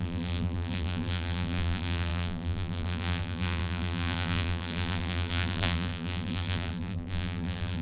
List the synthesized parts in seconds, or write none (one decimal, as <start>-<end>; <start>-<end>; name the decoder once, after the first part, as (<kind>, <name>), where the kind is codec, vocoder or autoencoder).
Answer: 0.0-7.8 (vocoder, BigVGAN v2)